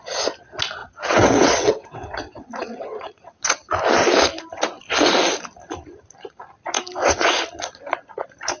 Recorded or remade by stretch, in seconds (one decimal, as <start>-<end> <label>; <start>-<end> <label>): 0.0-0.8 recorded; 0.8-3.7 remade; 3.7-8.6 recorded